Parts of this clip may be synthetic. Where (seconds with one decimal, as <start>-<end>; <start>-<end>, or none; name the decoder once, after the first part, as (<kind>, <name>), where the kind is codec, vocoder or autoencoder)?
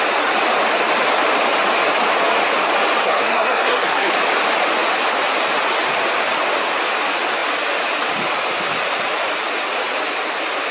3.0-4.1 (codec, SNAC)